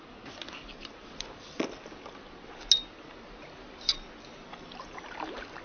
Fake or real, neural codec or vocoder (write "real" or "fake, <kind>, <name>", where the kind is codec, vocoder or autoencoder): real